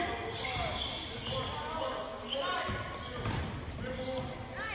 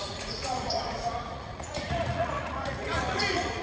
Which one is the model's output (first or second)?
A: second